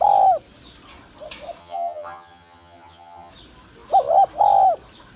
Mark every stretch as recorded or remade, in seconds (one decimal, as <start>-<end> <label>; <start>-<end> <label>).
0.0-1.6 recorded; 1.6-3.3 remade; 3.3-5.2 recorded